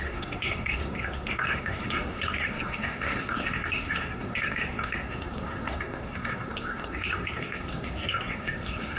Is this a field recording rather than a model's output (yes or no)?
no